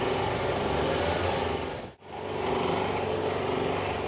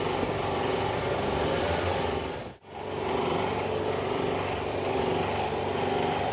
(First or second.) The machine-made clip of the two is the second